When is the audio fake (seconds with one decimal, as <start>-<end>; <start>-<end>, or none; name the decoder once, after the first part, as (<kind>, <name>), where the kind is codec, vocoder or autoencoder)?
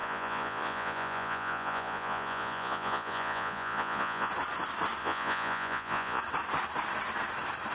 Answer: 0.0-4.3 (vocoder, Vocos); 5.0-6.2